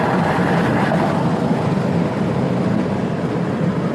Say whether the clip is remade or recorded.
recorded